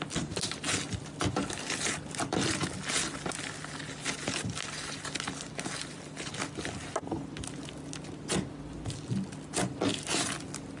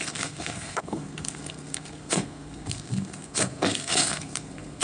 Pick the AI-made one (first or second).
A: second